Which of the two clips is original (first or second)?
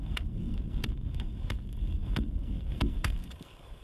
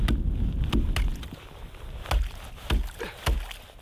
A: second